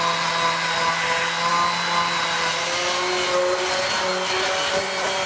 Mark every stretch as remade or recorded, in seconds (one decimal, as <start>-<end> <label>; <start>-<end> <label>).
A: 0.0-5.3 recorded